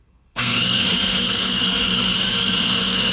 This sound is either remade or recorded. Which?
remade